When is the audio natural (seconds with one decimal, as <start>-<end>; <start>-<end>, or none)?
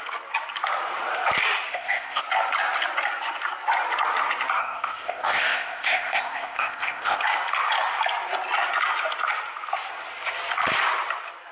0.0-1.7; 2.2-4.6; 7.2-11.5